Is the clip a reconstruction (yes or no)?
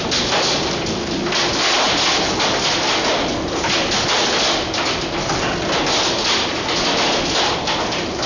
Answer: no